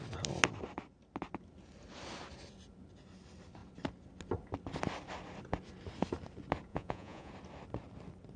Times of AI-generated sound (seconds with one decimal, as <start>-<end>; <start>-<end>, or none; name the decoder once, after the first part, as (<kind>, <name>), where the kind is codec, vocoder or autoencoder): 6.7-7.3 (vocoder, Vocos)